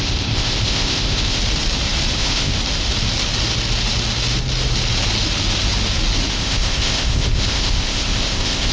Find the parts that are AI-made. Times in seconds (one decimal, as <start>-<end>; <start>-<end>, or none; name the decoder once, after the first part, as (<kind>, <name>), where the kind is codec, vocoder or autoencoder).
0.0-1.4 (codec, ZipCodec); 2.2-2.6; 6.3-8.7